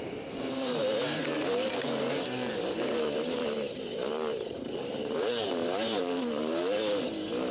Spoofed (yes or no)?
yes